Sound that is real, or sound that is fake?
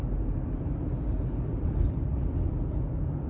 real